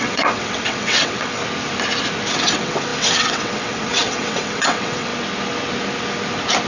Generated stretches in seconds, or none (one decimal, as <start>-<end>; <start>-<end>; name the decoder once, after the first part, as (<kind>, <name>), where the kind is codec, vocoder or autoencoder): 0.0-1.4 (vocoder, WaveNeXt); 2.3-5.1